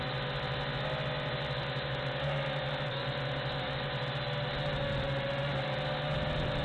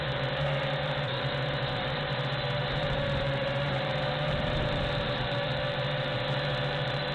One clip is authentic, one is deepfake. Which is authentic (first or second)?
first